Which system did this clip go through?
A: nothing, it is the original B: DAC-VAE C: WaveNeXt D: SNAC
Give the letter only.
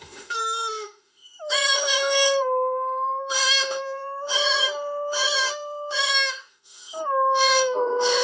B